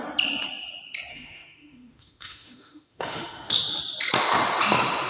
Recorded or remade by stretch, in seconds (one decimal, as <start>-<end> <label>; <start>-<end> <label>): 0.0-1.1 recorded; 1.1-3.5 remade; 3.5-5.1 recorded